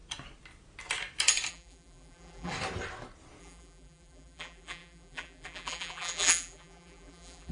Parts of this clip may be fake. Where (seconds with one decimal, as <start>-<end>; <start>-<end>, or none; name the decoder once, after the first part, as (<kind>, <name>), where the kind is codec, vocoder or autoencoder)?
1.5-2.5 (vocoder, BigVGAN v2); 3.4-7.5